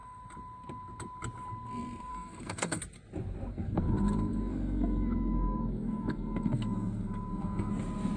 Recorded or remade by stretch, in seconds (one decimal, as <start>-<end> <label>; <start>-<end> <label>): 0.0-2.1 recorded; 2.1-2.8 remade; 2.8-3.5 recorded; 3.5-7.7 remade; 7.7-8.2 recorded